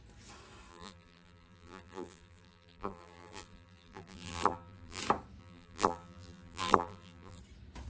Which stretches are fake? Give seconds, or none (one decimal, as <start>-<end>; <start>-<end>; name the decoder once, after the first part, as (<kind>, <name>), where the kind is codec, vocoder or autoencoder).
0.7-5.0 (vocoder, BigVGAN v2); 5.4-7.4